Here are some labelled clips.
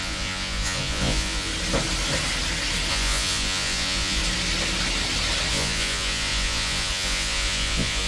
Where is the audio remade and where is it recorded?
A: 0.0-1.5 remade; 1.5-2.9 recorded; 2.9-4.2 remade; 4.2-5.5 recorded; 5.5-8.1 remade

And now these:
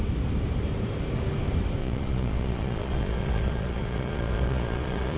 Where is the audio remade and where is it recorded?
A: 0.0-1.8 recorded; 1.8-5.2 remade

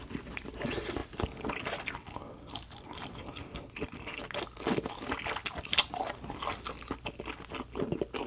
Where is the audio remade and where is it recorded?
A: 0.0-8.3 recorded